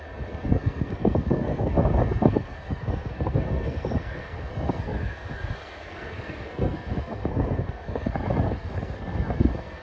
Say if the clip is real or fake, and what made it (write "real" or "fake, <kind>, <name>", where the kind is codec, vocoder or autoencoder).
fake, codec, SNAC